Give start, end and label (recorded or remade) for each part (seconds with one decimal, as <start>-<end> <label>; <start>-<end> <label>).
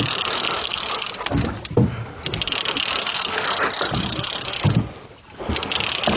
0.0-3.0 recorded; 3.0-3.6 remade; 3.6-6.2 recorded